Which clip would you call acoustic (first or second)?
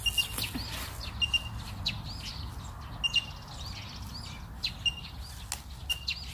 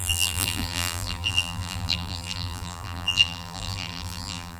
first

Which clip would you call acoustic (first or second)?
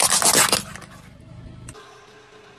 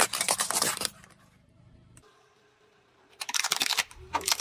first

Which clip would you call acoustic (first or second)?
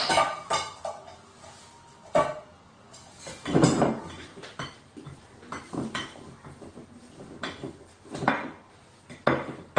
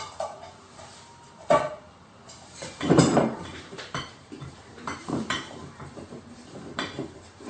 first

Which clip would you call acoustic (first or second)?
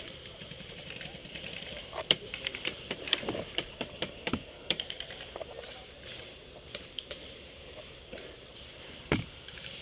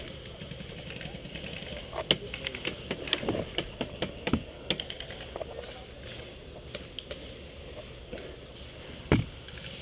second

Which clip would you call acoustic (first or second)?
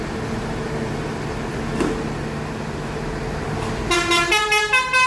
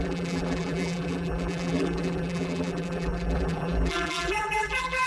first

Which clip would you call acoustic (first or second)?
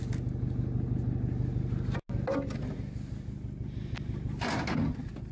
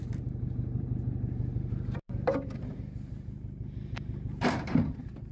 first